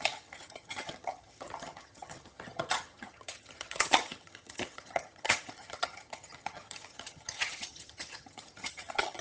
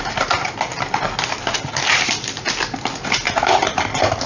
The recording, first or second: second